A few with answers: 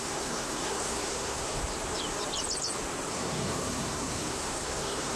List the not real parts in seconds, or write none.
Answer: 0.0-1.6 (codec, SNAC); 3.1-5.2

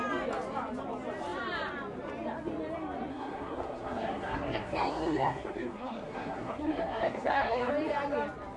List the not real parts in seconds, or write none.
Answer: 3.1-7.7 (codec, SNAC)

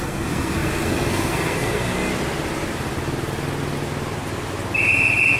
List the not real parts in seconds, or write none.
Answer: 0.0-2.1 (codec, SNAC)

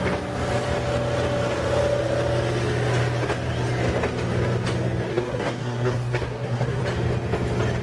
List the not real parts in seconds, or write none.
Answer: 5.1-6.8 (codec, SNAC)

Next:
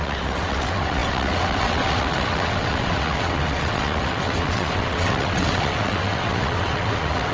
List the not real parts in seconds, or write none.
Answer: 0.0-7.3 (vocoder, WaveNeXt)

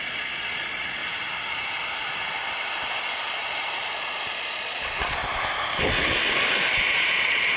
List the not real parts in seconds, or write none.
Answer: 0.0-1.0 (vocoder, Vocos); 3.9-5.2; 6.9-7.6

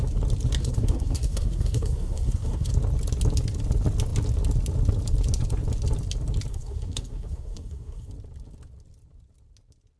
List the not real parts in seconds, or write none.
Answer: 0.6-2.7 (codec, SNAC); 6.5-8.1

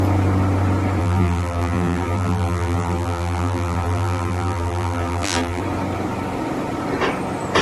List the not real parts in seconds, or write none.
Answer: 1.0-5.6 (vocoder, BigVGAN v2)